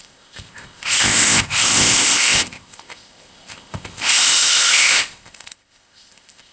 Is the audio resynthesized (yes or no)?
yes